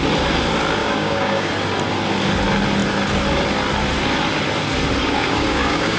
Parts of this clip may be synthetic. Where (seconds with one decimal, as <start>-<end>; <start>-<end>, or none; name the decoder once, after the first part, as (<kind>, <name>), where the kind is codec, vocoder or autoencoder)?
0.8-1.5 (codec, DAC); 5.0-6.0